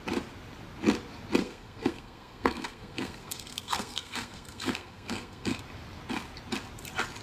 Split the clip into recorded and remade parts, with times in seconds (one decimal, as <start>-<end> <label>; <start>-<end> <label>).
0.0-1.4 recorded; 1.4-5.6 remade; 5.6-7.2 recorded